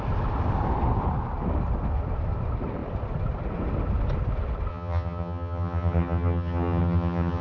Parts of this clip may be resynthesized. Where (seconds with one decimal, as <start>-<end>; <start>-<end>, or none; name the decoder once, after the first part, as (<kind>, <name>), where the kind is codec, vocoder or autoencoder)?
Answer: 4.7-7.4 (vocoder, HiFi-GAN)